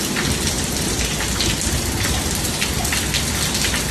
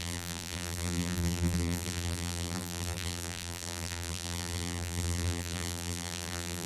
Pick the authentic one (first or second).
first